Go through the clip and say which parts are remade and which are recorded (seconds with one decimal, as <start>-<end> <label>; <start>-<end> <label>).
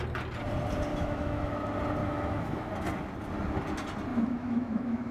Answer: 0.0-0.9 recorded; 0.9-1.5 remade; 1.5-2.0 recorded; 2.0-2.7 remade; 2.7-4.1 recorded; 4.1-5.1 remade